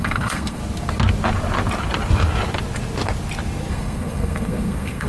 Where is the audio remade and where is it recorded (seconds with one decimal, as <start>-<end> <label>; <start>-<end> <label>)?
0.0-0.6 remade; 0.6-3.7 recorded; 3.7-5.1 remade